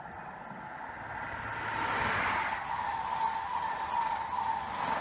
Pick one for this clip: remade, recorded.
recorded